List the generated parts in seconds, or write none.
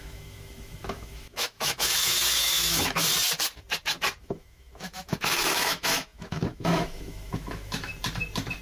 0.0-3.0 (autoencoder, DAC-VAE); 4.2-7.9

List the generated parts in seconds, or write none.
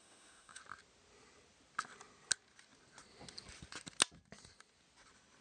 0.0-0.6 (autoencoder, DAC-VAE)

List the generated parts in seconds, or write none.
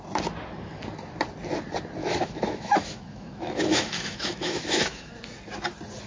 2.0-5.1 (autoencoder, DAC-VAE)